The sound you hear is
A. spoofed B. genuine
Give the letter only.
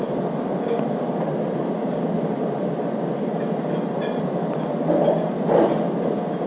B